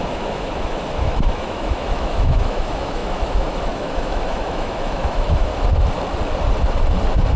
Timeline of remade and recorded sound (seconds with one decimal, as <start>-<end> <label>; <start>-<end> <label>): 0.0-5.5 remade; 5.5-7.4 recorded